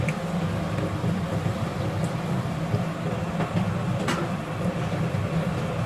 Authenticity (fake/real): real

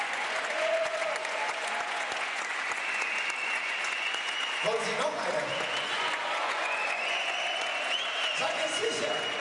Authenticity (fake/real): fake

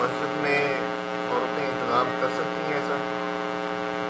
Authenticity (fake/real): real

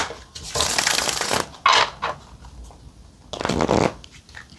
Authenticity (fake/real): real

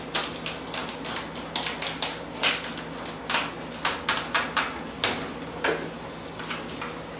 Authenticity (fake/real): real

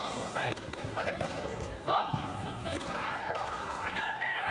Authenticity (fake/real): fake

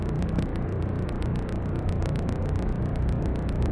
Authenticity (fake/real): real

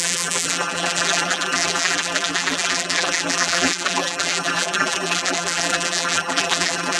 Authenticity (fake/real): fake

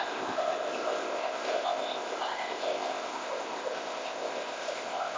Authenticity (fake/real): fake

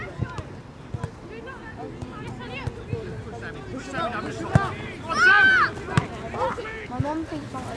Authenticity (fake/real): real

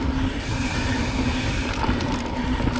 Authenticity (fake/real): real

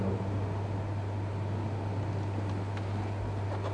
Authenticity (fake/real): real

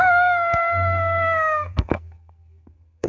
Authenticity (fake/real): fake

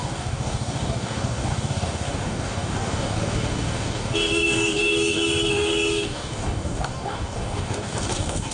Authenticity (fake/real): fake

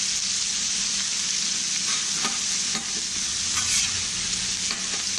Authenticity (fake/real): real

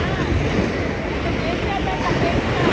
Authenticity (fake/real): real